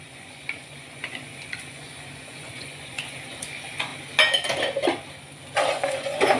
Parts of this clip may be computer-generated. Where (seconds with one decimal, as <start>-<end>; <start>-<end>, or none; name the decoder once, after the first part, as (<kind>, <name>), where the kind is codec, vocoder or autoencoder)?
0.0-3.9 (vocoder, Vocos); 5.7-6.4